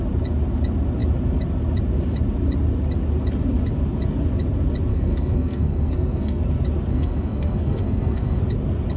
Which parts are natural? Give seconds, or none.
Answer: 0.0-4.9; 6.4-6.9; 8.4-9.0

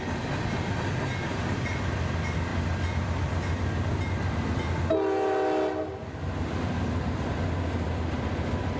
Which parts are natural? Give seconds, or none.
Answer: 0.0-8.8

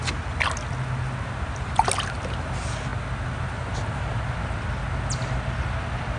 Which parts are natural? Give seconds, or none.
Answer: 0.0-6.2

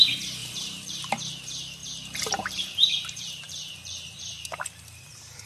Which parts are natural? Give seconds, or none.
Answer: 0.0-0.4; 1.3-1.8; 5.1-5.5